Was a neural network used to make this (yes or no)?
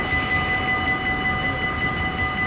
no